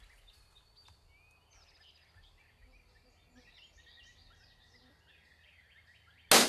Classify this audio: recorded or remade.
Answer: recorded